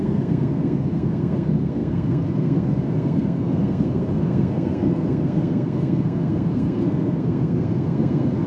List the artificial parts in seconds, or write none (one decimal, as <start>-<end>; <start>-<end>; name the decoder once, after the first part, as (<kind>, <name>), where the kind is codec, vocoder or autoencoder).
0.0-8.5 (codec, SNAC)